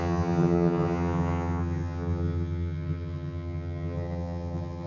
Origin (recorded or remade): remade